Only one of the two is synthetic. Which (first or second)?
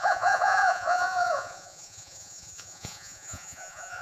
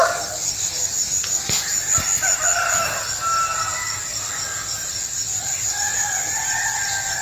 first